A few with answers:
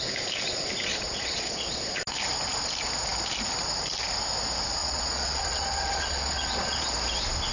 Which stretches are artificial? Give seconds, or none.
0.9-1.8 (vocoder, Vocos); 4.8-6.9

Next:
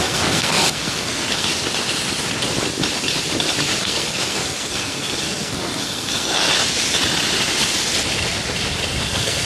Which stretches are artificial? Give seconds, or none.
0.0-1.5 (codec, SNAC); 3.8-6.5; 9.1-9.5